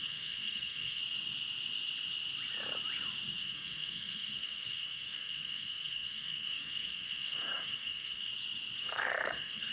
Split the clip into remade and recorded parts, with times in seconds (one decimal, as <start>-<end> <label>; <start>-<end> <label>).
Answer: 0.0-1.0 remade; 1.0-3.4 recorded; 3.4-8.3 remade; 8.3-8.8 recorded; 8.8-9.7 remade